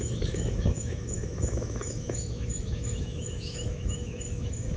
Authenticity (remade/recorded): remade